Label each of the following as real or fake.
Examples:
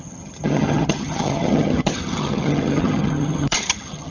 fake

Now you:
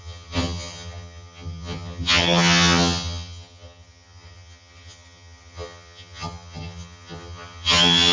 fake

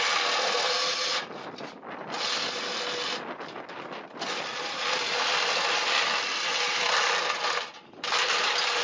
real